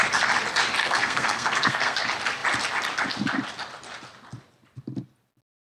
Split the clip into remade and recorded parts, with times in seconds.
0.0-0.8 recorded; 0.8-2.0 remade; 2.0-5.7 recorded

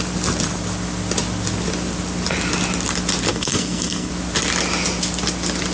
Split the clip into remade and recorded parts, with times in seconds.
0.0-3.3 recorded; 3.3-4.1 remade; 4.1-5.7 recorded

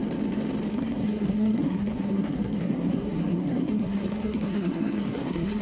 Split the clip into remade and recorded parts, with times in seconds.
0.0-0.7 recorded; 0.7-5.6 remade

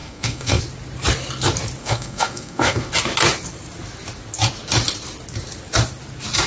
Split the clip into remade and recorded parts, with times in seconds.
0.0-0.6 remade; 0.6-1.8 recorded; 1.8-2.9 remade; 2.9-6.5 recorded

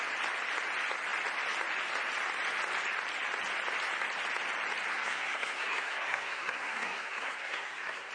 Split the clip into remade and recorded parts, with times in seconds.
0.0-4.9 recorded; 4.9-8.1 remade

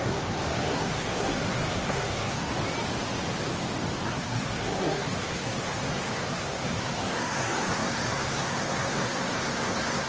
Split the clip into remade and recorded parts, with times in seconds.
0.0-2.5 remade; 2.5-4.1 recorded; 4.1-10.1 remade